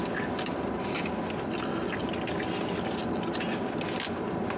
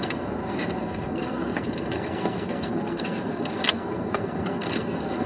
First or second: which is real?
first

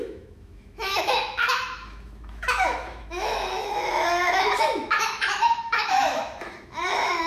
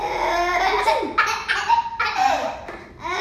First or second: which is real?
second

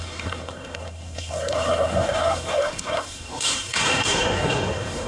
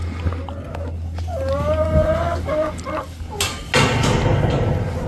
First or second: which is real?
second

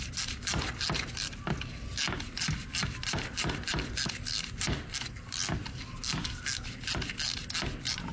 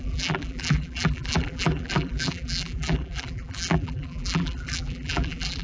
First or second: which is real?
first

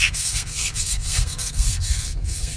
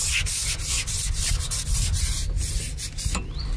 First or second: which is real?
second